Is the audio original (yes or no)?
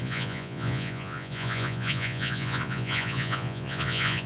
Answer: no